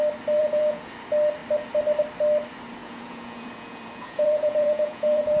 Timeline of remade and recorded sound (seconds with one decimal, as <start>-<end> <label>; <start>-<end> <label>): 0.0-0.4 recorded; 0.4-0.9 remade; 0.9-2.8 recorded; 2.8-5.4 remade